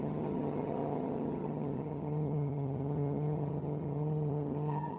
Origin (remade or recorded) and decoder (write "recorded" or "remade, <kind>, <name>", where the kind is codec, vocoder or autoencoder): remade, vocoder, HiFi-GAN